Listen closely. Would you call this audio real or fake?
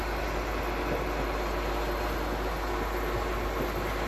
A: real